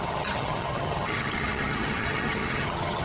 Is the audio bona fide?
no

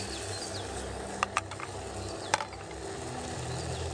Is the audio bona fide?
yes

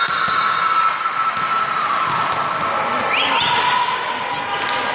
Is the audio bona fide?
yes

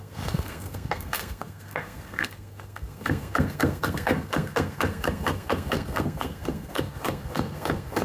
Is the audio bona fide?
no